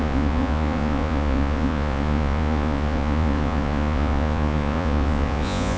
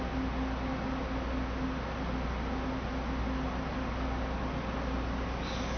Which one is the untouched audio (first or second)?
second